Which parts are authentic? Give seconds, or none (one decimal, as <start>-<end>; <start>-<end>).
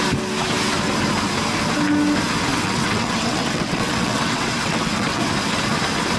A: 0.0-2.5; 5.2-6.2